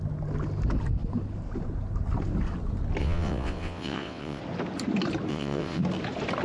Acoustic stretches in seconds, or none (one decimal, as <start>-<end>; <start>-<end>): 0.0-3.0; 4.4-5.3; 5.8-6.4

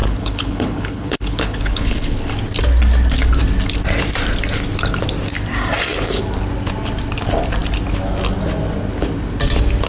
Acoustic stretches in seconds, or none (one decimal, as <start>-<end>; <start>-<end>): 2.3-9.9

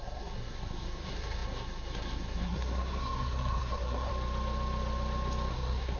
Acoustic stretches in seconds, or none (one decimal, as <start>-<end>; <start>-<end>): 4.1-5.5

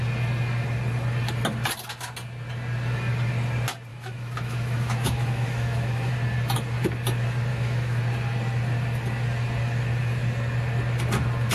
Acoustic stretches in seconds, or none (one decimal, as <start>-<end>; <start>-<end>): 0.0-3.9; 6.1-7.5; 8.0-11.5

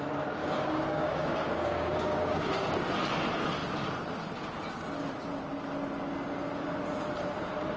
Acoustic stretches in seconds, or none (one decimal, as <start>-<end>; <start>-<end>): 0.0-0.4; 2.7-7.8

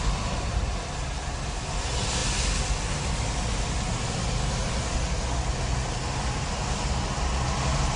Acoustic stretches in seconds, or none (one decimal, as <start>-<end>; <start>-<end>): 0.0-8.0